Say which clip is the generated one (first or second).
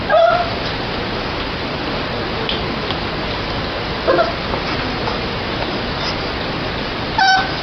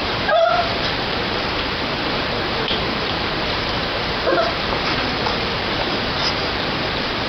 second